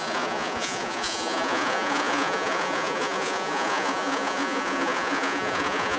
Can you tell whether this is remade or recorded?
remade